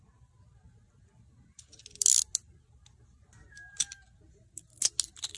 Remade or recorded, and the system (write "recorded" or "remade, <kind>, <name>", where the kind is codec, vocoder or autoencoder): recorded